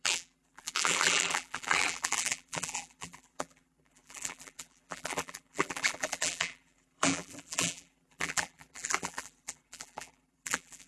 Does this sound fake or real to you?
fake